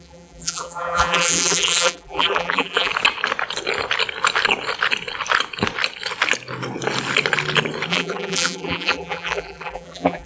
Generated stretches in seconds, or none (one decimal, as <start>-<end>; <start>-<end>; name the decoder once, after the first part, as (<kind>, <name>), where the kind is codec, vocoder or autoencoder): 0.0-2.9 (vocoder, BigVGAN v2); 7.9-10.3